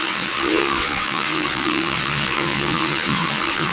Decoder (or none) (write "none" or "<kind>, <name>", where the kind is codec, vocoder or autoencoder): vocoder, WaveNeXt